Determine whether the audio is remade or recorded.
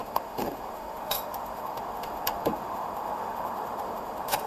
remade